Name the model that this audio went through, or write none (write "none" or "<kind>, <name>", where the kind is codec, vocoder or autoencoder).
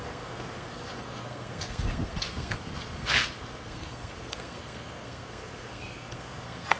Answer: codec, SNAC